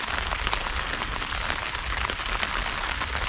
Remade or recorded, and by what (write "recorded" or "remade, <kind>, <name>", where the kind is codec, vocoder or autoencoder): recorded